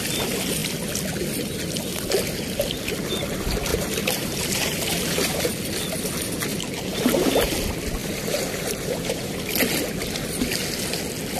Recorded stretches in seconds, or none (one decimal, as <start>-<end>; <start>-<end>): 0.0-3.7; 5.5-6.5; 7.3-8.0; 9.4-11.4

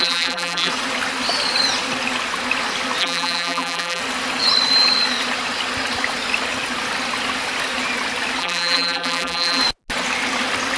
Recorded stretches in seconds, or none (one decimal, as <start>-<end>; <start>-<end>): 0.7-3.0; 4.0-8.4; 9.6-10.8

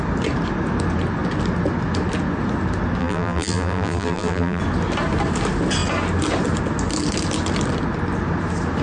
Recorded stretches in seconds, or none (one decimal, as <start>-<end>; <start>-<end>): 0.0-3.0; 4.6-8.8

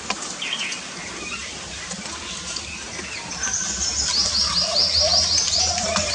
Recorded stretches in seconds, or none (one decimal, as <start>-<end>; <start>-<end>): 0.0-1.4; 2.2-6.1

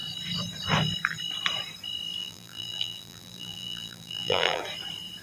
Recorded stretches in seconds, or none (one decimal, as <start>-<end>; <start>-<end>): 0.0-2.2; 4.6-5.2

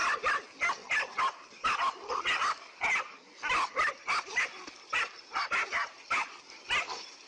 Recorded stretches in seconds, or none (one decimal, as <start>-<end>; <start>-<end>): 0.0-7.3

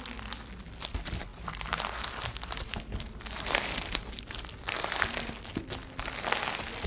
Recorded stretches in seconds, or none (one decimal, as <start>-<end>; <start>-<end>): 0.0-1.3; 4.2-6.9